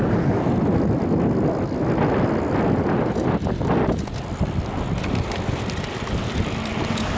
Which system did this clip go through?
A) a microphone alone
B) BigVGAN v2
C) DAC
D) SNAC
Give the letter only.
A